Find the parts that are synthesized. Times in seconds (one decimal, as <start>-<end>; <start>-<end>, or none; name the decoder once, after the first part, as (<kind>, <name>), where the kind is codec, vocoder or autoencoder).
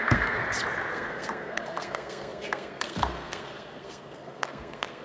0.0-0.4 (codec, SNAC); 0.9-5.0